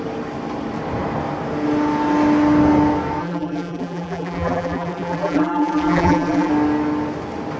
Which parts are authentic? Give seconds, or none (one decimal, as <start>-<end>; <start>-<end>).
0.0-3.2; 6.5-7.6